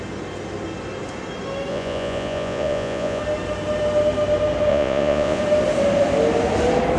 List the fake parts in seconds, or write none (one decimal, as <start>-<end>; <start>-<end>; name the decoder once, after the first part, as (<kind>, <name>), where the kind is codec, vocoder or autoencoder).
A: 1.7-3.2 (vocoder, Vocos); 4.7-5.4